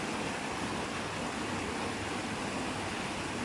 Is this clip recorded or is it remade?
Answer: recorded